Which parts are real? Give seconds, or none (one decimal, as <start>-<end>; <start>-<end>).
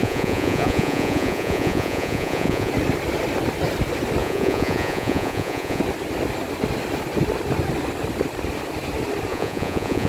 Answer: 2.7-4.2; 5.8-9.3